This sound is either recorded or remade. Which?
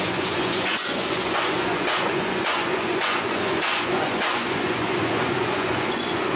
remade